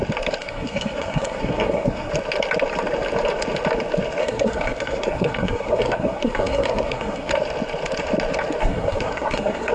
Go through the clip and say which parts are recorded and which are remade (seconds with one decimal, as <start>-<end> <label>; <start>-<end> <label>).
0.0-0.4 recorded; 0.4-2.1 remade; 2.1-4.2 recorded; 4.2-7.3 remade; 7.3-8.6 recorded; 8.6-9.7 remade